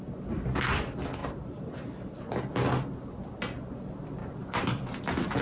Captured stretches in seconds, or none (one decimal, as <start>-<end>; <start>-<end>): 0.0-1.2; 2.3-4.2; 4.7-5.4